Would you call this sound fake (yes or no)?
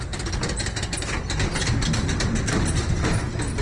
no